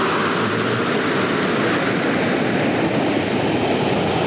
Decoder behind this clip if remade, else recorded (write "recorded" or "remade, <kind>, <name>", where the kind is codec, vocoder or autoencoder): recorded